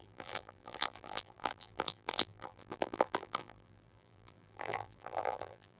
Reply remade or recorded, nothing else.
remade